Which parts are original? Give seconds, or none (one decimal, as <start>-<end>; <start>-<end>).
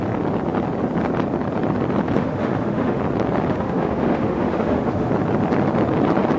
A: 0.0-2.2; 3.0-3.5; 5.1-6.4